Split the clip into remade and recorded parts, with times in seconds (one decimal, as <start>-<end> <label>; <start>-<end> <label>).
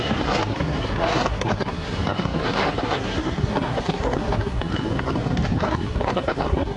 0.0-6.8 remade